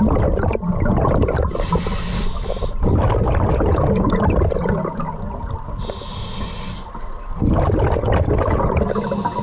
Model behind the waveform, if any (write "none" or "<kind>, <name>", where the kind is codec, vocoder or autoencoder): none